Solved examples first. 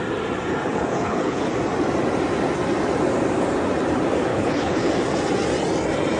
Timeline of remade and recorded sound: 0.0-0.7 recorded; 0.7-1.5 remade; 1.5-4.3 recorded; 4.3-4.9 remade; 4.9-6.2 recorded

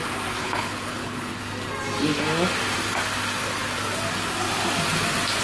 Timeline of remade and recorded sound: 0.0-0.4 recorded; 0.4-1.4 remade; 1.4-5.4 recorded

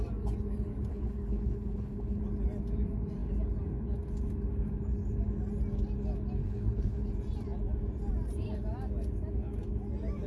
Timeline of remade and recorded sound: 0.0-0.9 recorded; 0.9-2.2 remade; 2.2-6.4 recorded; 6.4-7.1 remade; 7.1-10.3 recorded

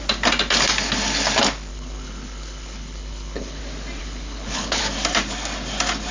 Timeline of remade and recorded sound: 0.0-1.7 recorded; 1.7-3.6 remade; 3.6-4.0 recorded; 4.0-4.8 remade; 4.8-6.1 recorded

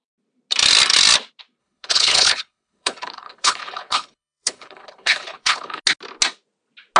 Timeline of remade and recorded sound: 0.0-1.6 recorded; 1.6-5.8 remade; 5.8-7.0 recorded

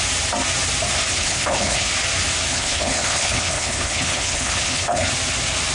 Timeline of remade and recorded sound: 0.0-1.1 recorded; 1.1-1.9 remade; 1.9-2.5 recorded; 2.5-5.1 remade; 5.1-5.7 recorded

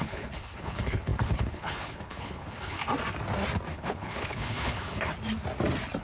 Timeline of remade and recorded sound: 0.0-2.8 remade; 2.8-3.7 recorded; 3.7-5.1 remade; 5.1-6.0 recorded